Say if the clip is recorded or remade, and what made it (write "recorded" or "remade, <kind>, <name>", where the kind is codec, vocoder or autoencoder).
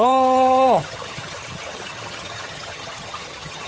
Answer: remade, vocoder, HiFi-GAN